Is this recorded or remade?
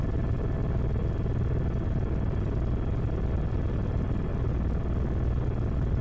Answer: recorded